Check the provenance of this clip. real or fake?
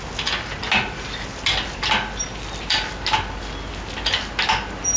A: real